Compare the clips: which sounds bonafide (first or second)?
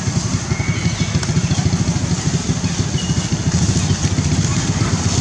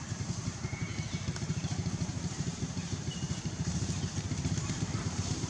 first